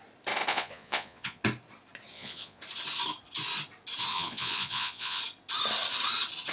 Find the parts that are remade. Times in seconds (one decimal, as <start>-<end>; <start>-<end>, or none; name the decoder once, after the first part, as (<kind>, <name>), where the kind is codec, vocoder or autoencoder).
0.5-1.4 (vocoder, Vocos); 2.1-2.6; 4.1-5.2

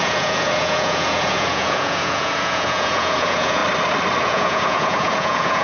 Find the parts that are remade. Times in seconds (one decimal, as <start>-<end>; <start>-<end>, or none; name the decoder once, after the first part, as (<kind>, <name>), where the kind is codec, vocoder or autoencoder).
0.0-3.6 (vocoder, Vocos); 4.2-5.6

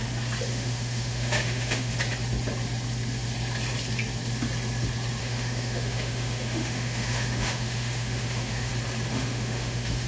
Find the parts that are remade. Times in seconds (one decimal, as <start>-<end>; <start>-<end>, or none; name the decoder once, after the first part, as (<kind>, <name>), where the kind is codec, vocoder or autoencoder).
0.5-1.9 (autoencoder, DAC-VAE); 5.2-8.7; 9.1-10.1

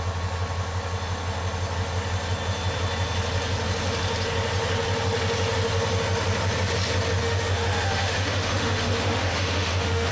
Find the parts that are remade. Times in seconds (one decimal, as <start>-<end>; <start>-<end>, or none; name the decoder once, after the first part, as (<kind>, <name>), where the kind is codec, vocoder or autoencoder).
7.2-10.1 (autoencoder, DAC-VAE)